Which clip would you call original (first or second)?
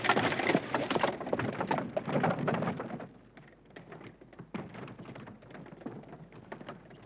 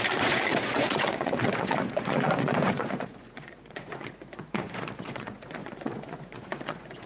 first